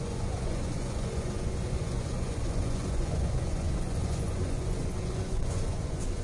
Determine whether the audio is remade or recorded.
remade